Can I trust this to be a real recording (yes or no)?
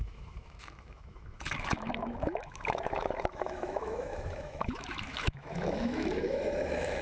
no